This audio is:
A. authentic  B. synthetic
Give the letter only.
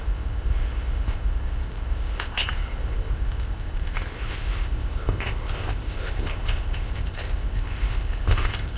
B